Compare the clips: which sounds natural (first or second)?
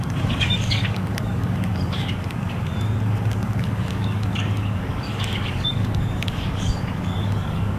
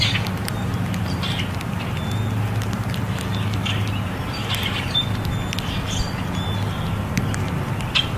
second